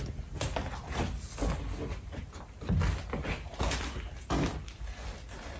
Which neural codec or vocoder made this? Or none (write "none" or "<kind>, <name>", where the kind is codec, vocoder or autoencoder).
none